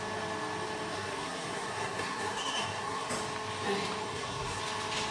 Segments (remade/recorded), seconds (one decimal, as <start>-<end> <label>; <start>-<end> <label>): 0.0-0.9 recorded; 0.9-3.1 remade; 3.1-4.0 recorded; 4.0-4.6 remade; 4.6-5.1 recorded